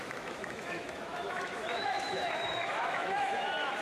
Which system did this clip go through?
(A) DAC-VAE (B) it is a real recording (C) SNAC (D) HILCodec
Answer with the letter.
A